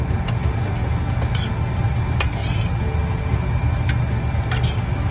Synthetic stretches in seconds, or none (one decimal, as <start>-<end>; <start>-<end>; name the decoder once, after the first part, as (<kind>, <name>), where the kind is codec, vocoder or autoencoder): none